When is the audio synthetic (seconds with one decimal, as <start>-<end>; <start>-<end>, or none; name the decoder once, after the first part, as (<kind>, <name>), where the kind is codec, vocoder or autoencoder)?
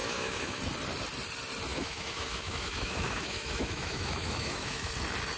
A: 0.0-0.6 (autoencoder, DAC-VAE); 1.7-4.9